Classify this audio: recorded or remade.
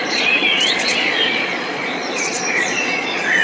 remade